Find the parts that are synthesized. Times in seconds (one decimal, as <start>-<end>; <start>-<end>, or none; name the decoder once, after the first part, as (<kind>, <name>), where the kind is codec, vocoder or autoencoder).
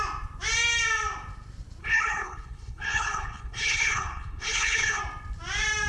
1.8-5.0 (codec, HILCodec)